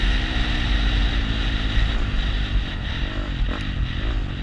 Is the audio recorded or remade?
recorded